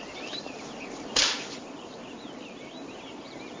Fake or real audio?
fake